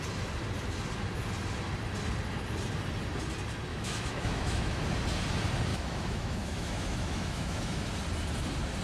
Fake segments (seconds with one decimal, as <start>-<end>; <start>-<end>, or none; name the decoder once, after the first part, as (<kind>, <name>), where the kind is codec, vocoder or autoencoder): 3.7-4.8 (autoencoder, DAC-VAE); 5.7-7.9